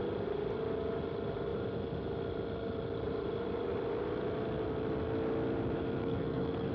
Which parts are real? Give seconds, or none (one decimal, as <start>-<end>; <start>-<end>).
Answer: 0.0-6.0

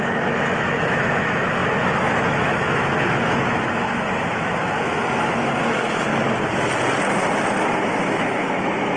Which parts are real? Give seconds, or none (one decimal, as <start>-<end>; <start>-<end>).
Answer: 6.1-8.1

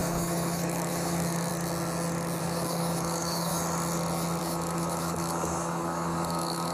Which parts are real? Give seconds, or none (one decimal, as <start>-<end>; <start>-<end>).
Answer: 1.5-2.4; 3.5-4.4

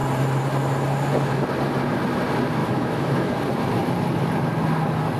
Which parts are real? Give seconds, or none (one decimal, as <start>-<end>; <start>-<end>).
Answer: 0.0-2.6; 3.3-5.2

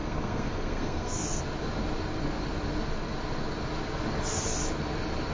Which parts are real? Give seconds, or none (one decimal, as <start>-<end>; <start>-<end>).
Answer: 1.4-5.3